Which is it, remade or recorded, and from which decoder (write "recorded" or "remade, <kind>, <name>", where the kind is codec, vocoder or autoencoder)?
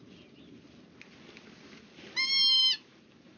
recorded